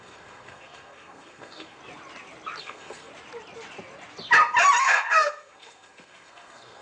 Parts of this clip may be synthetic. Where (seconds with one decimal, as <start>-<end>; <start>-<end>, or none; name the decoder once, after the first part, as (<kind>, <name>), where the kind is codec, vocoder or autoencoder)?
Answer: 0.0-1.8 (codec, SNAC); 2.6-3.1; 4.8-6.8